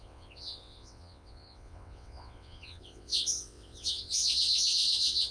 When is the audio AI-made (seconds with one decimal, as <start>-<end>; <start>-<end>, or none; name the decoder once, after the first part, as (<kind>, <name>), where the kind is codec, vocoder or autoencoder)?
0.0-5.3 (vocoder, WaveNeXt)